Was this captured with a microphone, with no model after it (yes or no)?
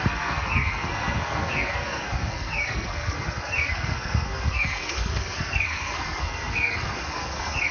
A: no